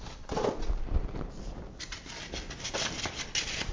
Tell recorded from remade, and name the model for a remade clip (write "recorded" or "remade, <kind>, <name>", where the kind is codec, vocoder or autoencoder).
recorded